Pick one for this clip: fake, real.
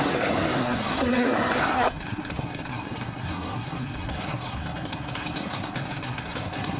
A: fake